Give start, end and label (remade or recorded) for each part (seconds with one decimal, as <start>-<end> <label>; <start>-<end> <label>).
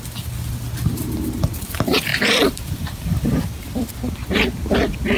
0.0-2.1 recorded; 2.1-3.9 remade; 3.9-5.2 recorded